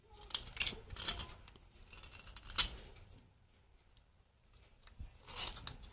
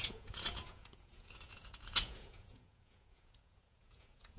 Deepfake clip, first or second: second